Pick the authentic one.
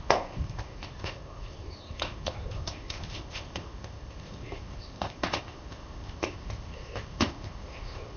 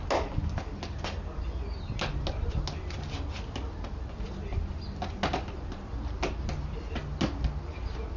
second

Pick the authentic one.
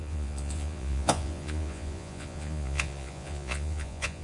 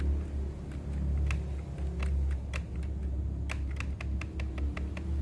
second